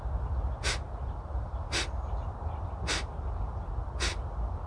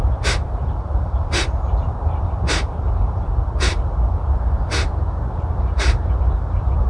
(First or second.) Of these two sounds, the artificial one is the second